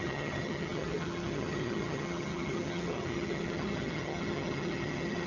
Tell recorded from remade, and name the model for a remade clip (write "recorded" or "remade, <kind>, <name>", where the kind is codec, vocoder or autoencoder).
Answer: remade, vocoder, HiFi-GAN